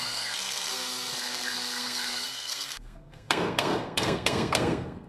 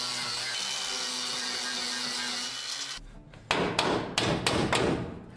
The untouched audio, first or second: second